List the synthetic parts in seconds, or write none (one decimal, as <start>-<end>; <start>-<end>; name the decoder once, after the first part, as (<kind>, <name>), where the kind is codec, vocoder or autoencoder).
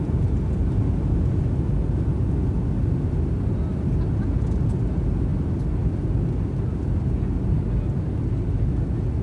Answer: none